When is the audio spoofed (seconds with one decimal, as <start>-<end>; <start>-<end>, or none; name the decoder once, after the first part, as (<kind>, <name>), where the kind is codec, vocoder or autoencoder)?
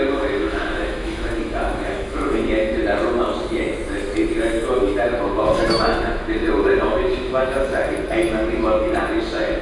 0.0-2.8 (autoencoder, DAC-VAE); 4.4-9.6